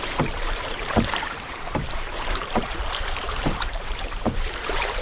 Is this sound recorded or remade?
remade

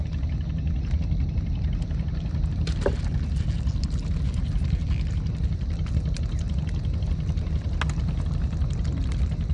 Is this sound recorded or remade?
recorded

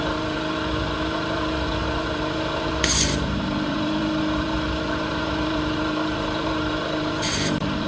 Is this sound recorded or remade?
remade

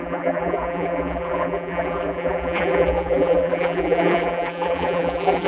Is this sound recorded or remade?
remade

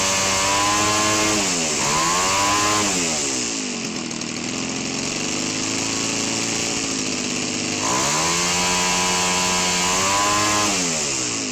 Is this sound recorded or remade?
recorded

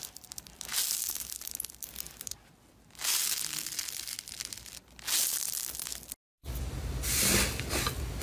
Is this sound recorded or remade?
recorded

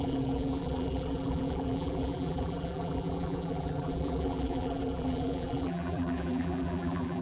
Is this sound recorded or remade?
remade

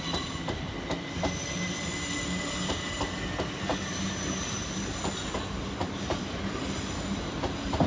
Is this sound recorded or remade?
recorded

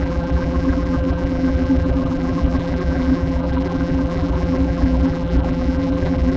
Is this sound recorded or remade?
remade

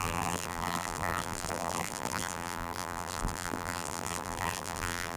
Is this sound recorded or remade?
remade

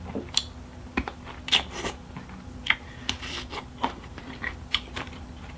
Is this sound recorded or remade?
remade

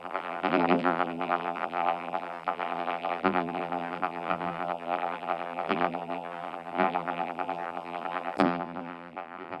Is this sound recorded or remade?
remade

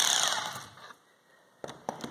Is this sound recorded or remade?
recorded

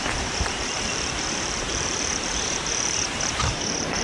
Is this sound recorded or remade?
remade